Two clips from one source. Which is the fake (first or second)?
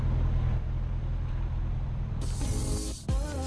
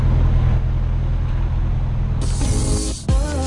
first